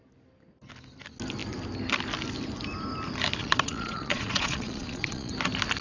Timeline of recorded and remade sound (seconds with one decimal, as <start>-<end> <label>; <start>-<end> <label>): 0.0-3.4 recorded; 3.4-5.3 remade; 5.3-5.8 recorded